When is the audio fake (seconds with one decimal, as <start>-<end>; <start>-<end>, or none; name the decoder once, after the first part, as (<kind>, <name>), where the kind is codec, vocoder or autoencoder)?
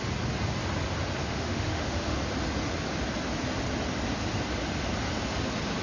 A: 1.2-2.2 (autoencoder, DAC-VAE)